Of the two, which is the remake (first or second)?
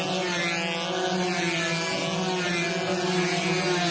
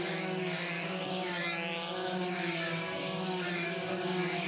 second